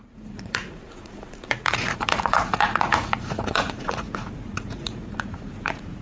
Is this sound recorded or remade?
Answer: remade